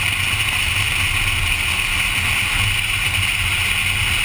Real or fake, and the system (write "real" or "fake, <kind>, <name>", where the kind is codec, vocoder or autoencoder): real